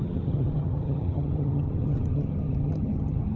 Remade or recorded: remade